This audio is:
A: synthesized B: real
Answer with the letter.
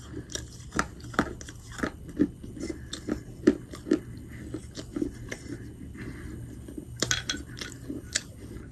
B